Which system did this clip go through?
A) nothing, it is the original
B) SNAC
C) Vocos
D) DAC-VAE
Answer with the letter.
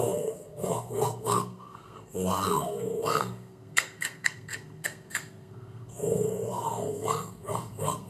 B